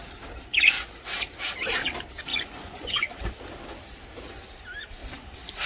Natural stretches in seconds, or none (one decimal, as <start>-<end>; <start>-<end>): 0.0-0.5; 1.0-2.3; 3.1-5.7